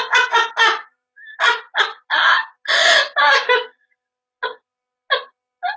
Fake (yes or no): no